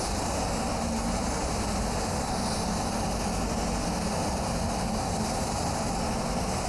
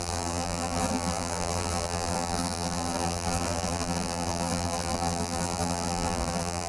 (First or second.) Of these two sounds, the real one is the first